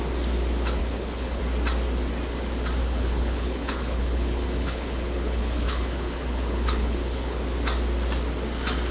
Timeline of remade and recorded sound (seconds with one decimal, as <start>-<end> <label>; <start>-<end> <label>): 0.0-0.8 recorded; 0.8-1.4 remade; 1.4-2.8 recorded; 2.8-7.4 remade; 7.4-8.9 recorded